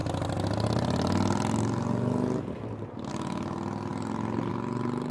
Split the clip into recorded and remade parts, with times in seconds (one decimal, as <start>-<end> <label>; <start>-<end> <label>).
0.0-5.1 recorded